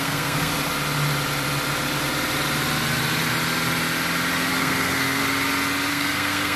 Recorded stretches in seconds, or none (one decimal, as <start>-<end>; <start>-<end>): 0.5-4.5; 5.2-5.9